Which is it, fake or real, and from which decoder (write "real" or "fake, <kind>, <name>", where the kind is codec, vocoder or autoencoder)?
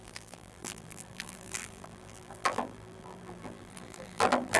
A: fake, vocoder, BigVGAN v2